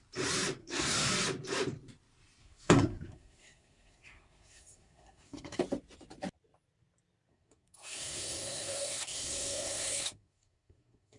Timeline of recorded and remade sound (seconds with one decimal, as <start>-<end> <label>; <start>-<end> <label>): 0.0-0.6 recorded; 0.6-1.1 remade; 1.1-2.4 recorded; 2.4-5.6 remade; 5.6-7.3 recorded; 7.3-11.2 remade